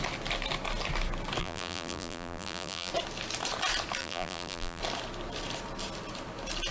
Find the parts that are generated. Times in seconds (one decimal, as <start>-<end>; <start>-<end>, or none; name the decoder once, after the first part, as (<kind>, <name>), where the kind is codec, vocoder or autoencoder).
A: 1.4-2.9 (vocoder, BigVGAN v2); 4.0-4.8